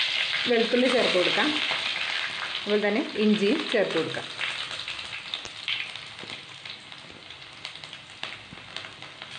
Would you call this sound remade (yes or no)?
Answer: no